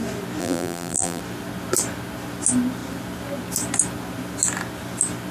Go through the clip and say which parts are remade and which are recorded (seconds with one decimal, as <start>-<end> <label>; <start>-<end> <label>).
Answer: 0.0-0.4 recorded; 0.4-1.2 remade; 1.2-5.3 recorded